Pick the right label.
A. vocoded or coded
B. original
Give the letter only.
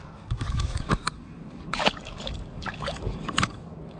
A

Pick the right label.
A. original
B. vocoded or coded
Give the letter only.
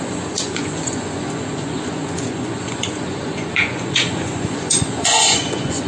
B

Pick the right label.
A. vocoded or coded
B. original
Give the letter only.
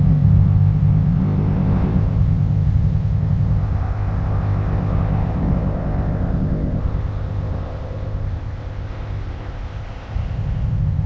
A